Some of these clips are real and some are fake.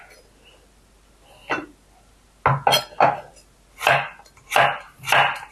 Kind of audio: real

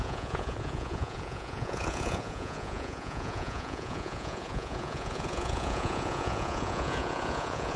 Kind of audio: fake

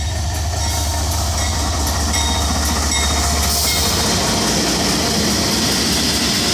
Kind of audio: real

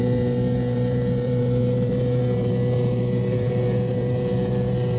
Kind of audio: fake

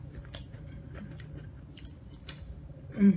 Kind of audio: fake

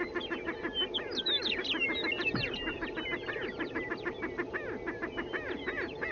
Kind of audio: real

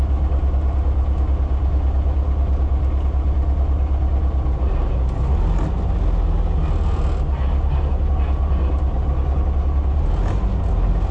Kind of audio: real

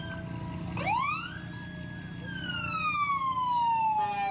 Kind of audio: real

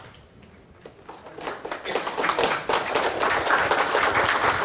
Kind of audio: real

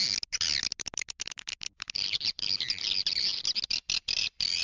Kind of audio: real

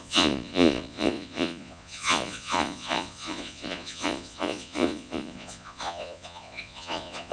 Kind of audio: fake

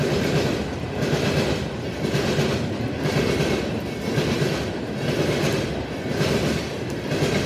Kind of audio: real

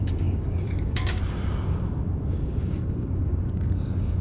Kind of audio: fake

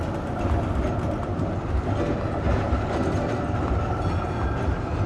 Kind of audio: real